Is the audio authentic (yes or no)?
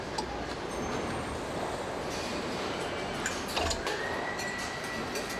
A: yes